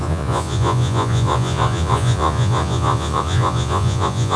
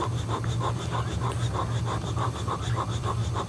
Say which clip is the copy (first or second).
first